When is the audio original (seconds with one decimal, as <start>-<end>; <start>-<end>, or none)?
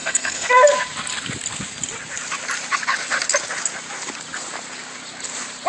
0.5-5.7